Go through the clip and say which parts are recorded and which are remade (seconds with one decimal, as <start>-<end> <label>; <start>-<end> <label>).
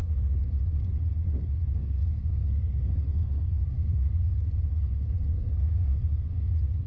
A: 0.0-1.7 recorded; 1.7-4.3 remade; 4.3-5.3 recorded; 5.3-6.5 remade; 6.5-6.9 recorded